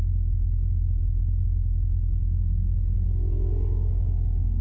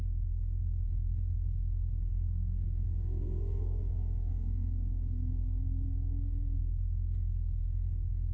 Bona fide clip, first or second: first